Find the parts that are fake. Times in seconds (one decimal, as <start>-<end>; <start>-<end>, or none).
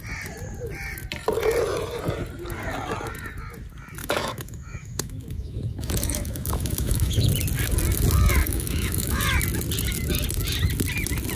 4.0-7.3; 8.4-9.2